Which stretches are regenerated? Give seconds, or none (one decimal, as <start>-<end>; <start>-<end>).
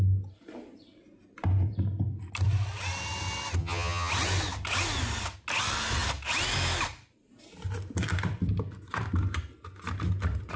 3.6-4.1